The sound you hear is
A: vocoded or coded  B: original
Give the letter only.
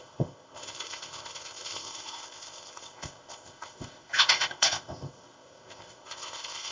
A